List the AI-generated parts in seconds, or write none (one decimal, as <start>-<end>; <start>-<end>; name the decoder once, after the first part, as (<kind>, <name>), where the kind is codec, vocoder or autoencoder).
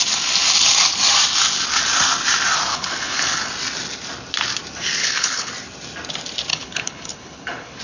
2.7-3.5 (codec, HILCodec); 5.0-5.5; 6.5-7.8